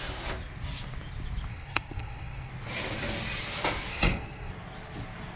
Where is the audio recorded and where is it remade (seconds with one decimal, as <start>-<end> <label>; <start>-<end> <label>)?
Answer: 0.0-1.5 recorded; 1.5-2.5 remade; 2.5-3.9 recorded; 3.9-4.5 remade; 4.5-5.4 recorded